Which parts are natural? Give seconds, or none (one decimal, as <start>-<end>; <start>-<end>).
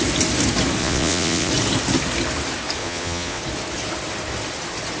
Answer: 0.0-0.8; 1.5-2.8; 3.4-5.0